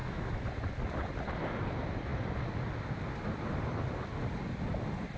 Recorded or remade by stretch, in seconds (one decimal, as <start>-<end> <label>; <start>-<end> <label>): 0.0-0.5 remade; 0.5-5.2 recorded